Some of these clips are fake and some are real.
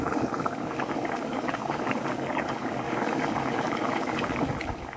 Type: fake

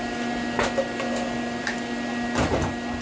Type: real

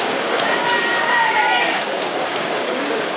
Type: fake